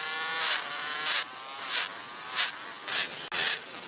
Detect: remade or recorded recorded